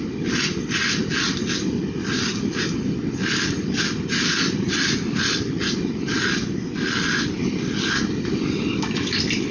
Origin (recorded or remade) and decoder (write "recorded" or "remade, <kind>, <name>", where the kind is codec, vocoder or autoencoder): recorded